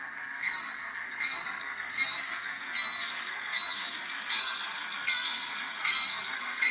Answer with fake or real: fake